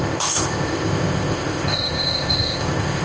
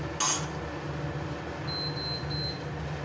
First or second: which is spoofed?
first